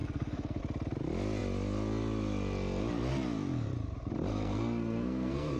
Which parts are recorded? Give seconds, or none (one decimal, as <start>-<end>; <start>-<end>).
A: 0.6-4.3